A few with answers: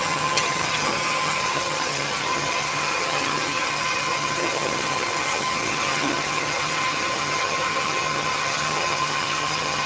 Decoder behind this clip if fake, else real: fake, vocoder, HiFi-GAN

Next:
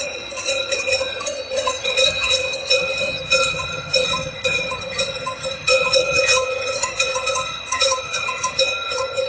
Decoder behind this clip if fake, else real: fake, vocoder, HiFi-GAN